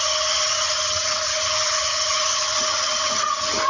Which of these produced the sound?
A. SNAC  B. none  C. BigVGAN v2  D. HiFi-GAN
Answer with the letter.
D